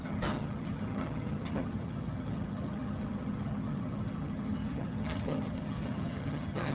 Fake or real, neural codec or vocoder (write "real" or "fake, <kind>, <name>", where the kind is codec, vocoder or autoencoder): fake, vocoder, HiFi-GAN